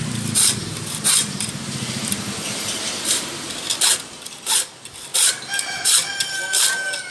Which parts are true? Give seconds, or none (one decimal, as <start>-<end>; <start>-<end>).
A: 0.0-0.6; 3.7-7.1